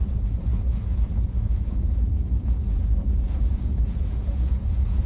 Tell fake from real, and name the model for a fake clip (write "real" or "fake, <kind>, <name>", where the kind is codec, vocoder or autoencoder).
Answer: fake, vocoder, Vocos